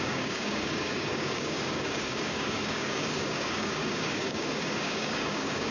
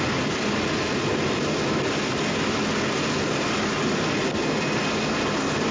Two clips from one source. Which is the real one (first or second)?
second